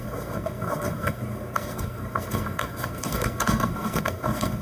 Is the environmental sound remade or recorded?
remade